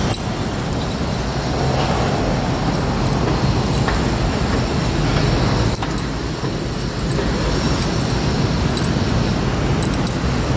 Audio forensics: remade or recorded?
recorded